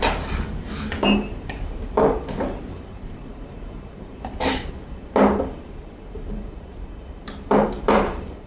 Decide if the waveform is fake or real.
fake